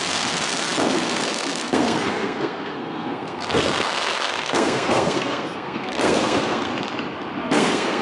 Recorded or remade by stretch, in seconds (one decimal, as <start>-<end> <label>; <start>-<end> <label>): 0.0-6.7 remade; 6.7-7.4 recorded; 7.4-8.0 remade